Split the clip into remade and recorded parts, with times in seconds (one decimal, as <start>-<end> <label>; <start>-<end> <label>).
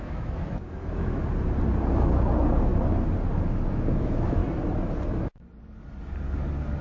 0.0-1.2 remade; 1.2-1.9 recorded; 1.9-2.7 remade; 2.7-3.7 recorded; 3.7-4.4 remade; 4.4-6.8 recorded